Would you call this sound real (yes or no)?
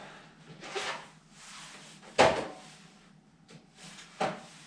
yes